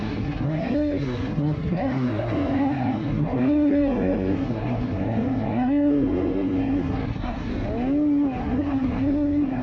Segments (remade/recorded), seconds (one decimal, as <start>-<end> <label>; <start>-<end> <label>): 0.0-7.5 remade; 7.5-8.4 recorded; 8.4-9.6 remade